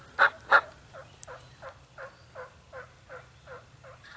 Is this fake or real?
real